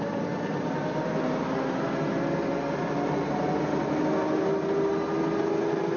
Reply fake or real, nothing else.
real